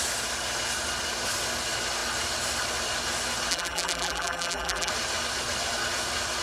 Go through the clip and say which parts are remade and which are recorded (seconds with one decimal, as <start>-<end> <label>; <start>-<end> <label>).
0.0-3.5 recorded; 3.5-4.9 remade; 4.9-6.4 recorded